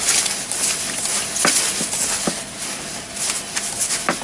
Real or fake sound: real